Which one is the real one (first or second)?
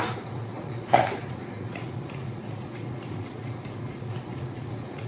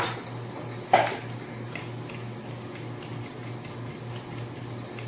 second